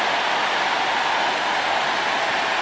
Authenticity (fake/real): real